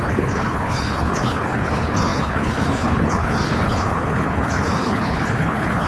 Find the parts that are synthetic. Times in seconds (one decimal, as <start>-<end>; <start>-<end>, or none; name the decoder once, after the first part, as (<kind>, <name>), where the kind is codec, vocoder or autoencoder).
0.0-5.9 (codec, HILCodec)